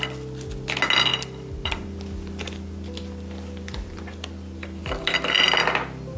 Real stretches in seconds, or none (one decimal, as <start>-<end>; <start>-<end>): 0.0-1.1; 4.8-6.2